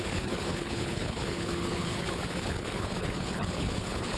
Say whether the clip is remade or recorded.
remade